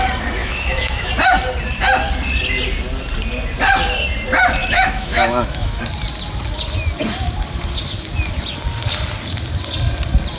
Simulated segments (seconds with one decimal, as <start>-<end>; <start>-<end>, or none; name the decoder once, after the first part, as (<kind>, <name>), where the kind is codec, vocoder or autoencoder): 0.4-1.1 (autoencoder, DAC-VAE); 4.6-5.8